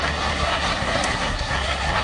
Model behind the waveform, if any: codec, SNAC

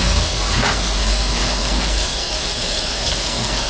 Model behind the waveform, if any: codec, SNAC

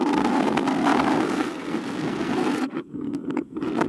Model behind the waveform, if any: codec, SNAC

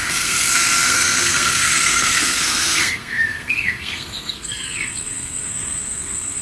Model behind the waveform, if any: codec, SNAC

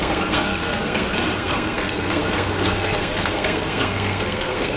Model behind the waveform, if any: codec, SNAC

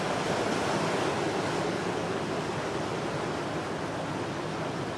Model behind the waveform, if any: none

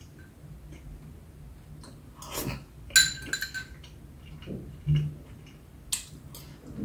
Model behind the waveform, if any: none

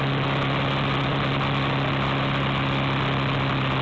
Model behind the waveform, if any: none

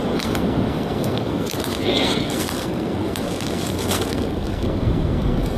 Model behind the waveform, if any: codec, SNAC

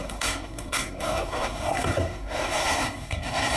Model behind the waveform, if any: codec, SNAC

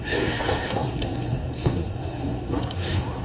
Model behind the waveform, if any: codec, SNAC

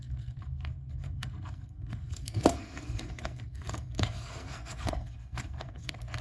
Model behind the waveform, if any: codec, SNAC